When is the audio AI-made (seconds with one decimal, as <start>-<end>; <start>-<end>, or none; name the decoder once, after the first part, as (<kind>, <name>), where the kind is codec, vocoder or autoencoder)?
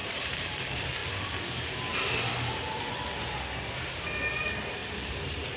0.0-0.6 (vocoder, BigVGAN v2); 4.8-5.6